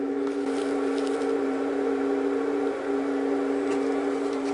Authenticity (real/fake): real